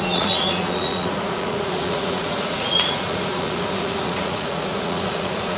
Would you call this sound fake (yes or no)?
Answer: yes